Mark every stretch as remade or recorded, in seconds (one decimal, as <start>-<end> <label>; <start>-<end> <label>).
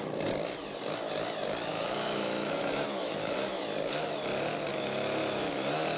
0.0-1.7 recorded; 1.7-3.6 remade; 3.6-4.7 recorded; 4.7-5.5 remade; 5.5-6.0 recorded